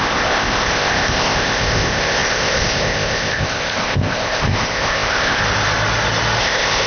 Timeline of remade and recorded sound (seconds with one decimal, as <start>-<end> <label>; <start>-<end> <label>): 0.0-5.4 remade; 5.4-6.4 recorded; 6.4-6.9 remade